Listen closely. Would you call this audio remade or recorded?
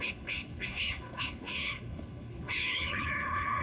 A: remade